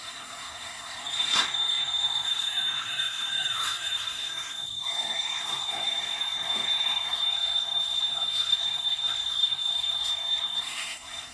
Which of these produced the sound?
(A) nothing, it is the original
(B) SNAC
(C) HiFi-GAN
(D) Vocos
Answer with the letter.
B